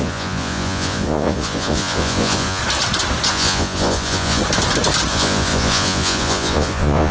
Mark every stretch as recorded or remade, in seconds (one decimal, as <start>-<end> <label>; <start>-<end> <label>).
0.0-2.6 remade; 2.6-3.3 recorded; 3.3-4.4 remade; 4.4-5.1 recorded; 5.1-7.1 remade

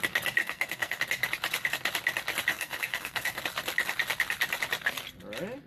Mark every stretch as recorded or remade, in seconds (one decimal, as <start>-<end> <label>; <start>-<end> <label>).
0.0-0.4 recorded; 0.4-1.0 remade; 1.0-2.5 recorded; 2.5-3.4 remade; 3.4-5.7 recorded

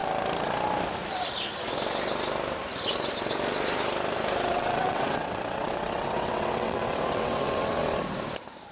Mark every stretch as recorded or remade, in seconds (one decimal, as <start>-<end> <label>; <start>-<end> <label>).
0.0-4.5 recorded; 4.5-7.8 remade; 7.8-8.7 recorded

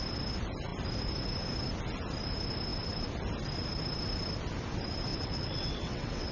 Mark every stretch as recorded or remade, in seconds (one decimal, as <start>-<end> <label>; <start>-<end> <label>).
0.0-5.1 recorded; 5.1-6.3 remade

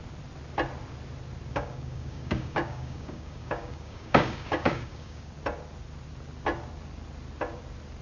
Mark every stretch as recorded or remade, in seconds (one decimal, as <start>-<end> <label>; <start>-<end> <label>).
0.0-1.5 recorded; 1.5-5.3 remade; 5.3-8.0 recorded